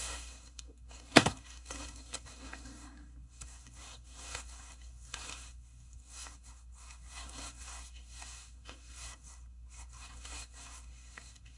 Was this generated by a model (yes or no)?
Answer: yes